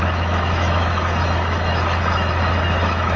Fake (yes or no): yes